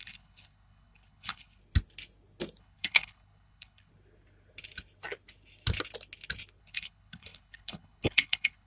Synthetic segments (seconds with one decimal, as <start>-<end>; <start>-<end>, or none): 0.0-1.6; 2.6-3.9; 6.6-8.7

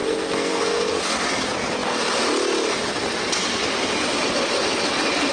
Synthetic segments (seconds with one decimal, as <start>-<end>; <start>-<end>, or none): 0.0-1.0

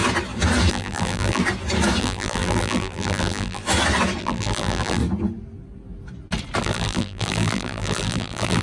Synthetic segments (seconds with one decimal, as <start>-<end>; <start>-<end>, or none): 0.7-1.4; 2.0-3.6; 4.2-5.0; 6.6-8.6

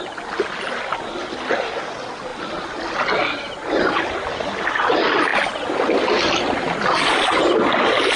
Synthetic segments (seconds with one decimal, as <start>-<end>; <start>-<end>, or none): none

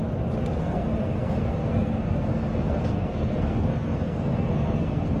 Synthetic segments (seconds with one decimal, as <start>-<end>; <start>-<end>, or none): 0.6-5.2